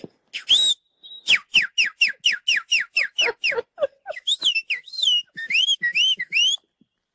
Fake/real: real